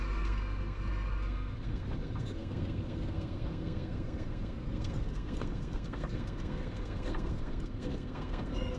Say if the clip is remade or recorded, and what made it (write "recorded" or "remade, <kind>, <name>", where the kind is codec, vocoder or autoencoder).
remade, codec, SNAC